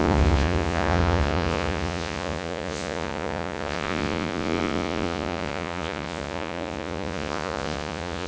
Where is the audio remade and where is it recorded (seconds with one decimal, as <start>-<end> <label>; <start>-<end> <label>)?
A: 0.0-8.3 remade